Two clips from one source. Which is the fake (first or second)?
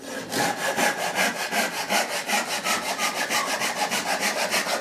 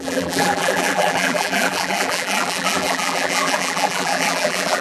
second